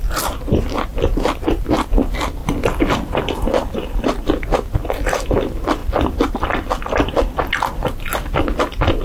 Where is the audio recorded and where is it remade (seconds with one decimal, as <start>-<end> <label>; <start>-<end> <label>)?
0.0-0.9 recorded; 0.9-1.7 remade; 1.7-2.4 recorded; 2.4-4.0 remade; 4.0-9.0 recorded